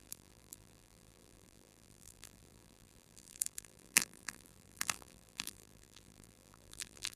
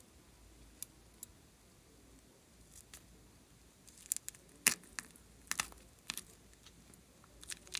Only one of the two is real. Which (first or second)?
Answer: second